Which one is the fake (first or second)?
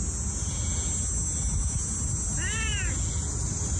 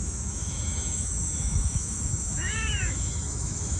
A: second